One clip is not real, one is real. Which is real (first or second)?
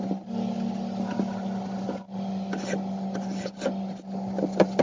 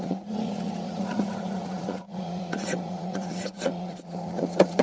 first